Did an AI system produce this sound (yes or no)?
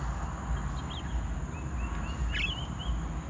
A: no